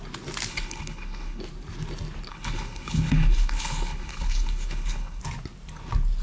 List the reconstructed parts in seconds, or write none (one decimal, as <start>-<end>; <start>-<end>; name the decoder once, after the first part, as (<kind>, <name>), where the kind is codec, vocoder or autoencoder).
0.5-1.4 (codec, HILCodec); 2.3-5.2